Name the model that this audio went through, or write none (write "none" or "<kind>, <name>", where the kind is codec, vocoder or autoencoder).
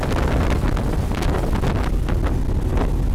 none